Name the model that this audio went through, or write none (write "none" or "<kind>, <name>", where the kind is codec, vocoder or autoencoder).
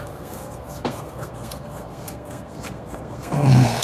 codec, SNAC